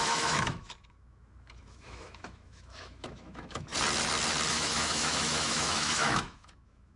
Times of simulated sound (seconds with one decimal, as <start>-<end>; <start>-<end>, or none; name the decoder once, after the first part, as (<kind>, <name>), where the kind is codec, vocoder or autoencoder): 0.0-3.7 (autoencoder, DAC-VAE); 4.5-7.0